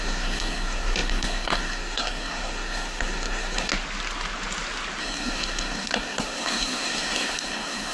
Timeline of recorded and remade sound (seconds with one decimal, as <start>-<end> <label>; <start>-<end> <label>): 0.0-3.7 remade; 3.7-5.0 recorded; 5.0-7.9 remade